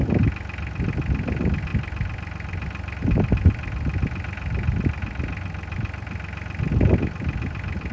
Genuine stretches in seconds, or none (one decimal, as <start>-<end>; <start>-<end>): 0.0-7.9